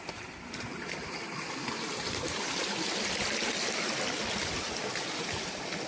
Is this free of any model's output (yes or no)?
yes